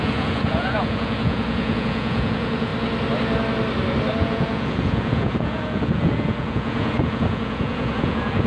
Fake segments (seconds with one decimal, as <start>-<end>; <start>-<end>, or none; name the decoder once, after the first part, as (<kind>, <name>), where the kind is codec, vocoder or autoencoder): 0.0-2.7 (vocoder, Vocos); 4.2-8.5